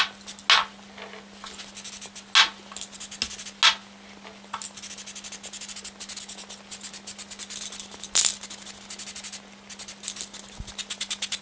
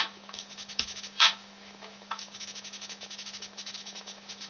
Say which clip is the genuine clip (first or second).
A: first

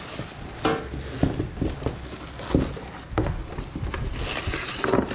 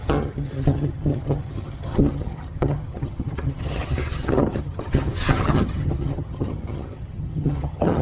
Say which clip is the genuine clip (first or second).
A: first